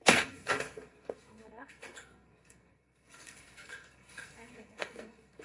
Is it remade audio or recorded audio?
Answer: remade